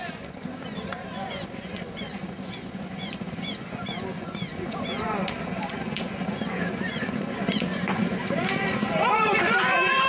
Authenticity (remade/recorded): remade